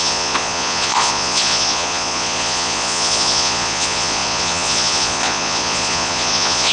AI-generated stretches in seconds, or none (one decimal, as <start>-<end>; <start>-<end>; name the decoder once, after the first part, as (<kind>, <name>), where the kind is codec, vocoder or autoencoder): 0.0-6.7 (vocoder, Vocos)